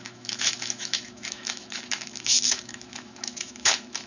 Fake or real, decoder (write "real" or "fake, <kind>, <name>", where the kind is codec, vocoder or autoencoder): fake, autoencoder, DAC-VAE